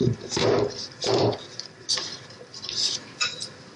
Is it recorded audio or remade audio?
remade